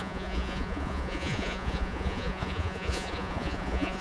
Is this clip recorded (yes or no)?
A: no